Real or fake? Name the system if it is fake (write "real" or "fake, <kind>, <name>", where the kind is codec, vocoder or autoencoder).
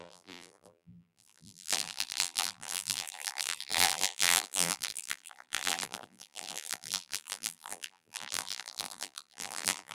fake, vocoder, BigVGAN v2